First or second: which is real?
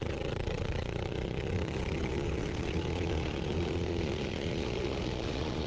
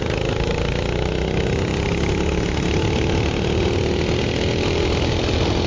second